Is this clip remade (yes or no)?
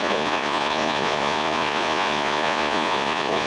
yes